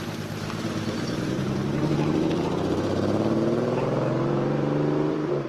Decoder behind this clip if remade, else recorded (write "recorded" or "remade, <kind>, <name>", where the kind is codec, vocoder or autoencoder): remade, vocoder, BigVGAN v2